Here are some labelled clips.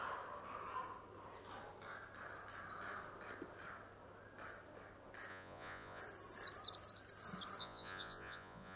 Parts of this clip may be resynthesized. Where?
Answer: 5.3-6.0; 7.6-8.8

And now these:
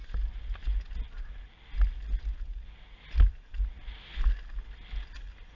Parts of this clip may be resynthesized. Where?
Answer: none

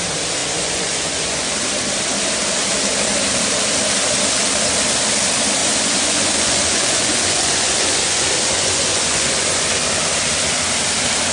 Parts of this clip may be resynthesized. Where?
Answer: 0.4-1.5; 5.6-10.0

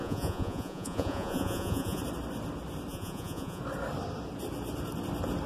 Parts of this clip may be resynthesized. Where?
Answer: 0.0-2.0; 2.9-3.6

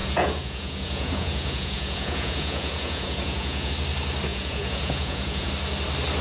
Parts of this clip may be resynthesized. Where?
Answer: 0.0-3.7; 4.3-5.5